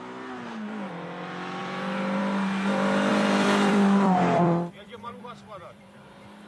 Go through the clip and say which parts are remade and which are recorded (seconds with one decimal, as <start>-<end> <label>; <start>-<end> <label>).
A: 0.0-1.6 recorded; 1.6-2.2 remade; 2.2-3.1 recorded; 3.1-6.0 remade; 6.0-6.5 recorded